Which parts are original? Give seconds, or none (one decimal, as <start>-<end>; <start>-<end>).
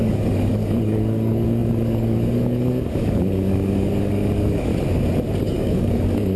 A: 4.7-5.4